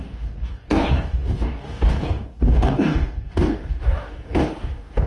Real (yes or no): no